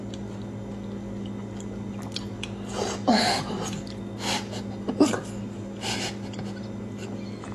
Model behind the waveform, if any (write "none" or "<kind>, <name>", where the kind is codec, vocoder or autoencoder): none